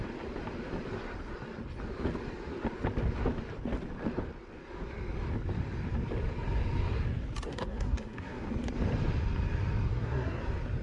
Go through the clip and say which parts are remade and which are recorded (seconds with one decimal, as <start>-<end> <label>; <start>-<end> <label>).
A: 0.0-7.5 recorded; 7.5-8.5 remade; 8.5-9.9 recorded; 9.9-10.4 remade; 10.4-10.8 recorded